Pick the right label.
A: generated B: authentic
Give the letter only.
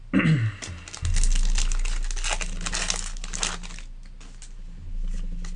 B